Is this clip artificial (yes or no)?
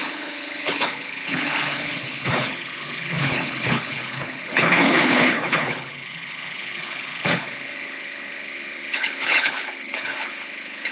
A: yes